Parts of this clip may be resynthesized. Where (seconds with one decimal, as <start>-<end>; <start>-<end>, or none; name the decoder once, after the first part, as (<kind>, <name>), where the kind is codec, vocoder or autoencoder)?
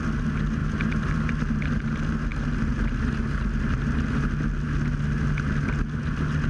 0.6-1.3 (vocoder, BigVGAN v2)